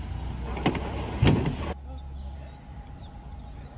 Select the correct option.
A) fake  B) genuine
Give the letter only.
B